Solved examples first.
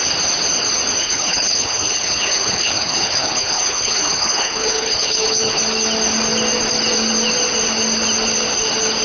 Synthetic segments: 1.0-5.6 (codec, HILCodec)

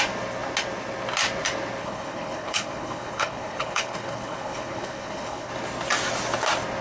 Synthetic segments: 1.8-5.5 (codec, HILCodec)

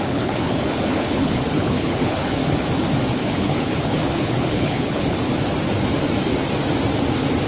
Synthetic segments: 0.0-2.4 (codec, HILCodec); 3.2-5.3

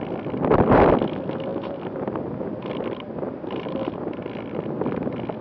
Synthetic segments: none

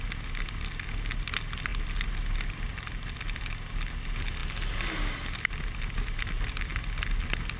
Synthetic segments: none

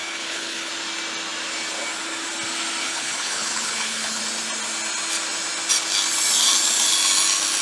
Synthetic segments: 0.0-0.7 (codec, HILCodec); 2.8-4.2